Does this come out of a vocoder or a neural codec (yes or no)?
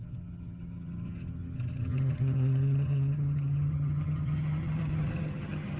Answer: yes